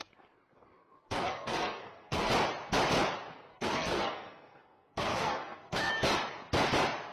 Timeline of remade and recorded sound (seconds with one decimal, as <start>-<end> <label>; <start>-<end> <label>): 0.0-0.8 recorded; 0.8-2.3 remade; 2.3-3.5 recorded; 3.5-5.9 remade; 5.9-7.1 recorded